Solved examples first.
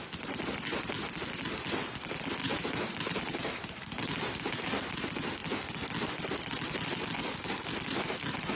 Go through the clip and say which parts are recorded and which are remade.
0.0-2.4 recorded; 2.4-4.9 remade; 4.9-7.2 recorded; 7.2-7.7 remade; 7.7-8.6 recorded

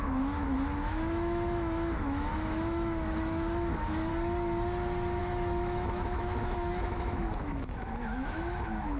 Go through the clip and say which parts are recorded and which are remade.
0.0-4.1 remade; 4.1-5.2 recorded; 5.2-9.0 remade

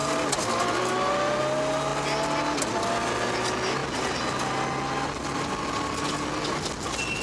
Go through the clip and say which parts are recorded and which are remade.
0.0-7.2 recorded

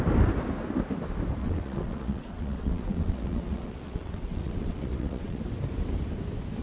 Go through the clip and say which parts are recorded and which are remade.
0.0-1.4 recorded; 1.4-5.4 remade; 5.4-6.6 recorded